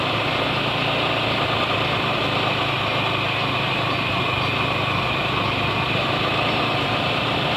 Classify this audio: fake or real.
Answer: real